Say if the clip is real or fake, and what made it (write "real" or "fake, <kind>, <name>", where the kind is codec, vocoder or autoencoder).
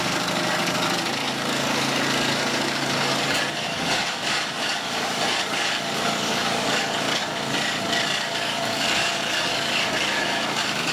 fake, codec, DAC